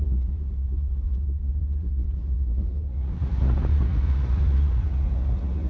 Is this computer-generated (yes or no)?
yes